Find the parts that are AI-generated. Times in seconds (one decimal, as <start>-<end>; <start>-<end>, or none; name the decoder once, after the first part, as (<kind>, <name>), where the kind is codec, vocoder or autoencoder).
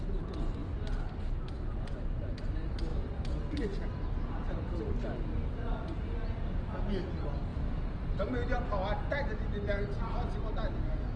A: none